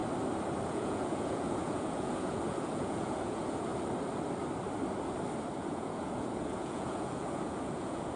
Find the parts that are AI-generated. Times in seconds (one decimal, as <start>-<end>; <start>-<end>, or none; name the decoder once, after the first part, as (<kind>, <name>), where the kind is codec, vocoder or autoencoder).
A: 0.7-3.7 (vocoder, Vocos); 5.6-8.2